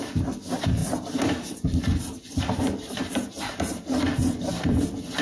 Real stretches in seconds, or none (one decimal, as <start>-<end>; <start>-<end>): 0.0-0.8; 3.3-4.2; 4.8-5.2